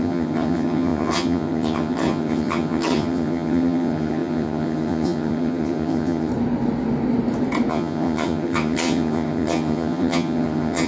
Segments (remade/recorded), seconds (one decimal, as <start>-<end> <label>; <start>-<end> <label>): 0.0-6.3 remade; 6.3-7.7 recorded; 7.7-10.9 remade